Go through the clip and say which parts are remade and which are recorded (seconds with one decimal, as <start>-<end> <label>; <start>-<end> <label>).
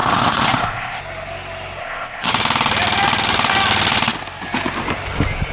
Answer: 0.0-1.0 remade; 1.0-1.8 recorded; 1.8-2.3 remade; 2.3-5.5 recorded